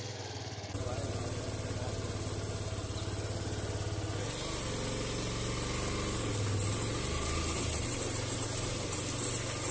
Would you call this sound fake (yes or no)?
no